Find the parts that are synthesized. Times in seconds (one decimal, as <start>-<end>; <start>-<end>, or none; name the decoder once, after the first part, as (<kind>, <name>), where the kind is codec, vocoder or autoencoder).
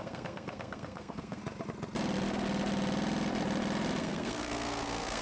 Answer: 0.0-1.4 (codec, SNAC); 4.0-5.2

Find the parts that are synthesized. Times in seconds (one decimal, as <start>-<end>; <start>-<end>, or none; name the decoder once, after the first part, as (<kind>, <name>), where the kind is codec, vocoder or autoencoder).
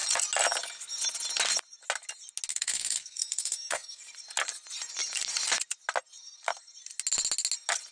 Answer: 2.5-4.0 (codec, SNAC)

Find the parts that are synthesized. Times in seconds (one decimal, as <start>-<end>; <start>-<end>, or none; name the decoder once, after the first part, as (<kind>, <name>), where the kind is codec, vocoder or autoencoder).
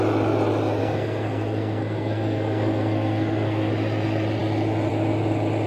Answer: 0.8-3.7 (codec, SNAC)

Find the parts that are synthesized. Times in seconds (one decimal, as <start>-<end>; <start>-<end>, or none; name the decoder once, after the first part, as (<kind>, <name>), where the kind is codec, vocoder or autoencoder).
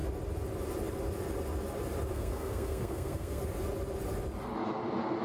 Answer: 2.1-3.4 (codec, SNAC)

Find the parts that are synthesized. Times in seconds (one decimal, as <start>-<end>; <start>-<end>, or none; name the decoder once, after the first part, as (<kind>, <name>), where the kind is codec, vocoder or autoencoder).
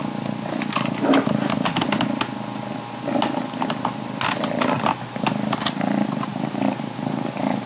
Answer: none